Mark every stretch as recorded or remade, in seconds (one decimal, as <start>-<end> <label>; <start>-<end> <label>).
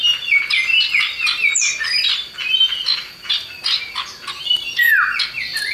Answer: 0.0-5.7 recorded